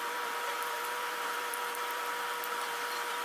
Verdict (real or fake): fake